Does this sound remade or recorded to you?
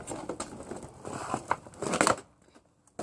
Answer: recorded